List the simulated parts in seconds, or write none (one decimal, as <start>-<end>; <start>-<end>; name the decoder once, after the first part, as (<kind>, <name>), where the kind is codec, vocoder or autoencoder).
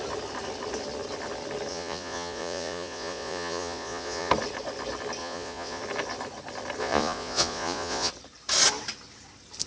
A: 1.7-4.3 (vocoder, Vocos); 5.2-5.8; 6.8-8.1